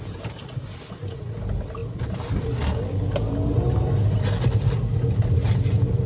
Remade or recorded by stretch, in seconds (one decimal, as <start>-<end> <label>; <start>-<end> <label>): 0.0-6.1 recorded